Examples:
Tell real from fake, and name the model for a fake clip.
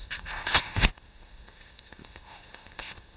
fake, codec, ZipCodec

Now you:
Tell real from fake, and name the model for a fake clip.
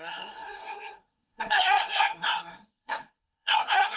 fake, codec, SNAC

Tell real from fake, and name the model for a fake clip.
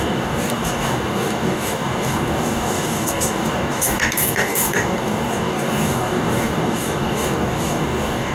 fake, codec, DAC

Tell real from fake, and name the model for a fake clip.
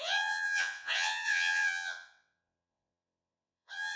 fake, vocoder, WaveNeXt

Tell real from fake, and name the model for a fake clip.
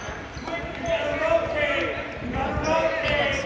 real